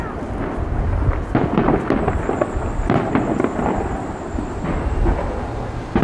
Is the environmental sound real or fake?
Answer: real